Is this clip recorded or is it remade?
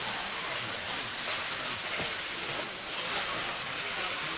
recorded